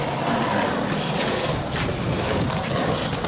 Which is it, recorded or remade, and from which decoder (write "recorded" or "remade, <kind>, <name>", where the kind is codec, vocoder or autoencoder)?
recorded